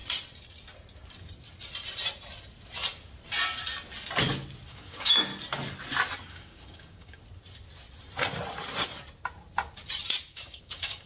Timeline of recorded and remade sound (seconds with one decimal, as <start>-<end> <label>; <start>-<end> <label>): 0.0-4.7 recorded; 4.7-5.3 remade; 5.3-6.3 recorded; 6.3-7.2 remade; 7.2-10.3 recorded; 10.3-11.1 remade